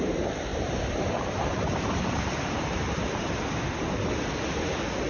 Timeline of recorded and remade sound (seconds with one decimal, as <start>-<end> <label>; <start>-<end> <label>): 0.0-0.5 recorded; 0.5-3.3 remade; 3.3-5.1 recorded